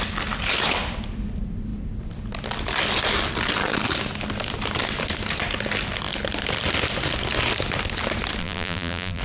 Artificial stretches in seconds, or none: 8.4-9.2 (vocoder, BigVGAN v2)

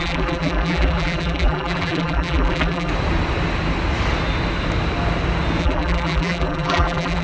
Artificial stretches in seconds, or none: 0.0-2.9 (vocoder, BigVGAN v2); 5.6-7.2

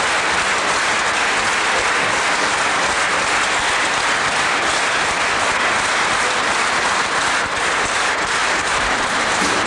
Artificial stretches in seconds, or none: 8.4-9.7 (vocoder, BigVGAN v2)

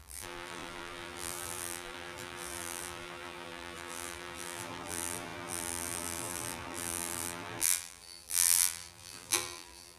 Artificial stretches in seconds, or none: 0.0-10.0 (vocoder, BigVGAN v2)

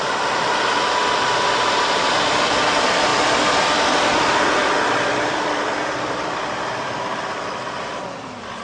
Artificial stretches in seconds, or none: 0.0-3.1 (vocoder, BigVGAN v2); 4.0-8.6

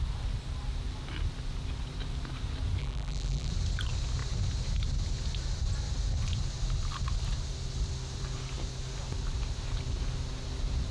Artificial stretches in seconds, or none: 2.8-3.5 (vocoder, BigVGAN v2)

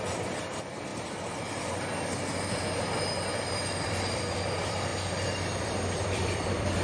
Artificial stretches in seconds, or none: 0.0-0.9 (vocoder, BigVGAN v2); 3.5-4.9; 5.6-6.8

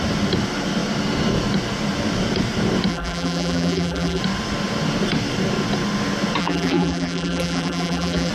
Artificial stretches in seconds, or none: 2.9-4.2 (vocoder, BigVGAN v2); 6.4-8.3